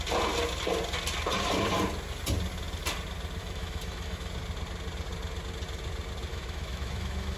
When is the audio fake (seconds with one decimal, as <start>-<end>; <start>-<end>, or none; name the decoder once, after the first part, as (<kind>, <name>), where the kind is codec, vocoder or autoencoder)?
3.4-4.3 (autoencoder, DAC-VAE); 6.3-7.4